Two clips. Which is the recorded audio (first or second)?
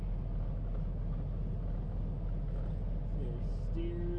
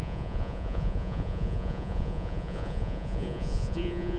first